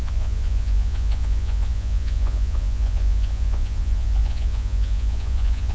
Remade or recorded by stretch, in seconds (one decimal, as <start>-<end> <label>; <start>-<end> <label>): 0.0-5.7 remade